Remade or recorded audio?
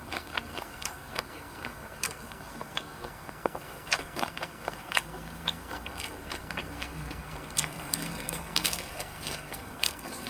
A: remade